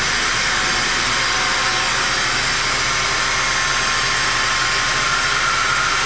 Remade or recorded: recorded